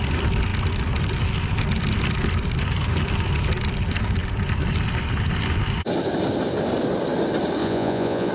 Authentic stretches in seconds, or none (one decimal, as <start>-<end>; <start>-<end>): 0.0-7.6